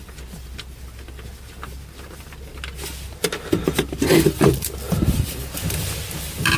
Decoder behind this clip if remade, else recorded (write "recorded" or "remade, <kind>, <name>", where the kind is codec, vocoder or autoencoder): recorded